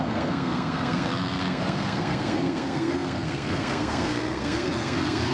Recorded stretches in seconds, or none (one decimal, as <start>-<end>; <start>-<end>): none